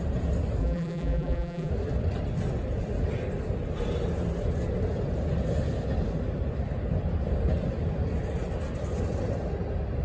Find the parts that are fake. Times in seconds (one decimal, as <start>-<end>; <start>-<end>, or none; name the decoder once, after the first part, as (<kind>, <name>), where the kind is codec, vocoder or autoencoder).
0.6-1.7 (vocoder, BigVGAN v2)